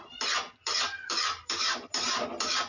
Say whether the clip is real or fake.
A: fake